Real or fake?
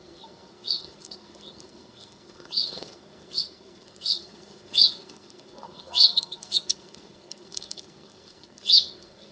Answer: fake